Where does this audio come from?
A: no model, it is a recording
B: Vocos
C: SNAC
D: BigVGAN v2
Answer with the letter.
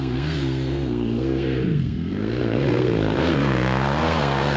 C